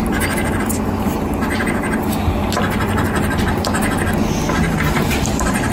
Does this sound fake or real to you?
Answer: real